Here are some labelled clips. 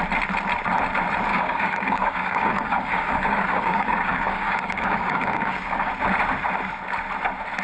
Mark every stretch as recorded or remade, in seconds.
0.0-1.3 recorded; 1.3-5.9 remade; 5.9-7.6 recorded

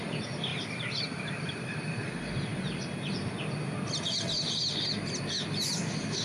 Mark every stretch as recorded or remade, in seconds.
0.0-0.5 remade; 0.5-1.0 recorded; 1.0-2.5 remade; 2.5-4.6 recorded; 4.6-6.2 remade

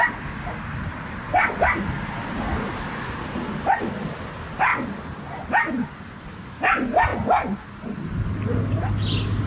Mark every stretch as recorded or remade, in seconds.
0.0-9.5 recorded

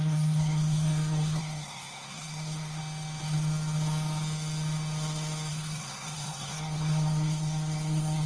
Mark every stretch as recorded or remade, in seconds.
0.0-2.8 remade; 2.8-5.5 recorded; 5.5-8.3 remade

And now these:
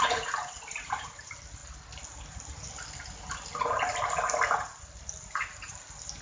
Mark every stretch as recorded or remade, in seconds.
0.0-6.2 recorded